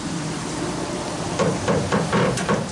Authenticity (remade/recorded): remade